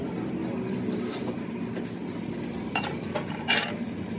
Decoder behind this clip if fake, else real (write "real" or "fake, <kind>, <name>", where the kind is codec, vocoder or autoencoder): real